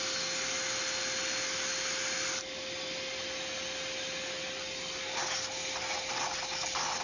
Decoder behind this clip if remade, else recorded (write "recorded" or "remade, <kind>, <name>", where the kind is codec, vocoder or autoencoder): recorded